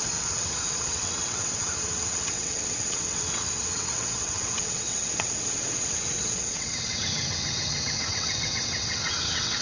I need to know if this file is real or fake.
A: fake